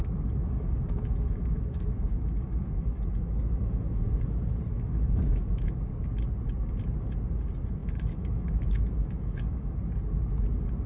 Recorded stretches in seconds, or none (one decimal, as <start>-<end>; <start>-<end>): 0.0-0.4; 4.1-4.7; 5.9-7.8; 9.8-10.9